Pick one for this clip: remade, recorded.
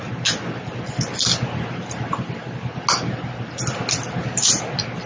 recorded